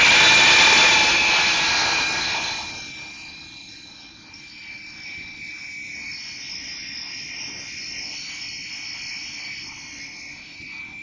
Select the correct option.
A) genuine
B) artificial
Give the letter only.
A